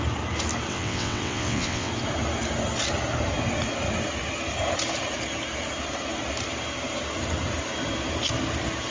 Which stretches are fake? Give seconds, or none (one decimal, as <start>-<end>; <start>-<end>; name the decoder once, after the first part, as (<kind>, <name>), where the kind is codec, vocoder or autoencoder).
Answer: 0.7-1.9 (vocoder, WaveNeXt)